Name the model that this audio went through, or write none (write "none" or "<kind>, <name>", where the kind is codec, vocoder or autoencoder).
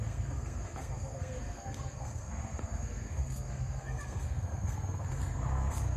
codec, SNAC